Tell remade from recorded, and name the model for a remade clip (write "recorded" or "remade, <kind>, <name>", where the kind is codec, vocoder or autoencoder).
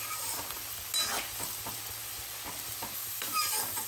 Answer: recorded